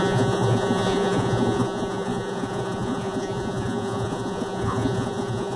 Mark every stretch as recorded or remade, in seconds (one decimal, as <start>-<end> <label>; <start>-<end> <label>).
0.0-5.6 remade